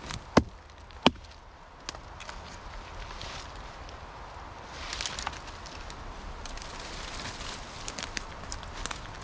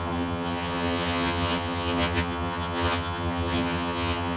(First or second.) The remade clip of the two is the second